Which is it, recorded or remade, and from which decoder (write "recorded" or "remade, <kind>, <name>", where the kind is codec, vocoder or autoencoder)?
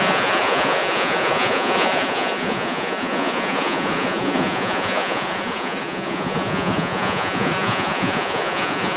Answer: remade, vocoder, Vocos